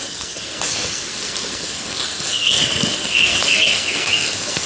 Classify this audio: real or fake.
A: fake